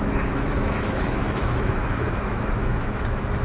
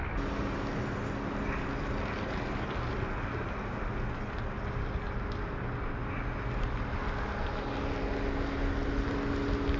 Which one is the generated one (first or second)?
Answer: first